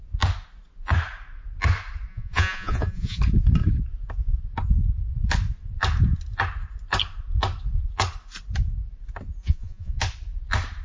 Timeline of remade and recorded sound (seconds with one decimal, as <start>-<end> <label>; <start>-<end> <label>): 0.0-2.1 recorded; 2.1-3.2 remade; 3.2-9.4 recorded; 9.4-10.0 remade; 10.0-10.8 recorded